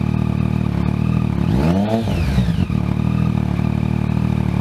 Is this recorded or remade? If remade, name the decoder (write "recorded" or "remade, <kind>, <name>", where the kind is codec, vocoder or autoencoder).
recorded